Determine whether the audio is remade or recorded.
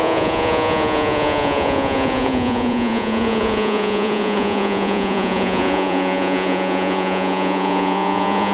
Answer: remade